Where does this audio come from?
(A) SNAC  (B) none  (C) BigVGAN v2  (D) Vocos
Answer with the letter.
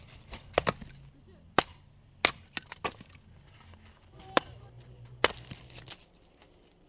B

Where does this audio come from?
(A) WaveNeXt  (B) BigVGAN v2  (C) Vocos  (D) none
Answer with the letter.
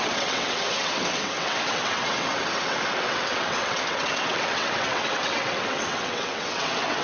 A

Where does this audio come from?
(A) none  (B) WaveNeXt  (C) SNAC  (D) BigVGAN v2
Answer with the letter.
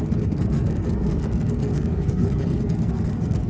C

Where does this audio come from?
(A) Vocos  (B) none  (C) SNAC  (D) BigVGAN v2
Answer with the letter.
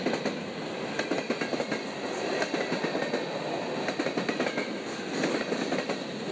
B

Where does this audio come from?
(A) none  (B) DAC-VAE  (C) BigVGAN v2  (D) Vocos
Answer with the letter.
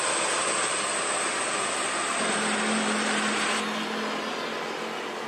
A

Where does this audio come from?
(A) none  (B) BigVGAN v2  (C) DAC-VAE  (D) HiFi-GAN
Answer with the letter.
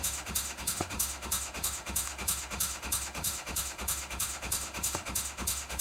C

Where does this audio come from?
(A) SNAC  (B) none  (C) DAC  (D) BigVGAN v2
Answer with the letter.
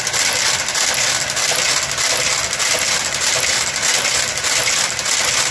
B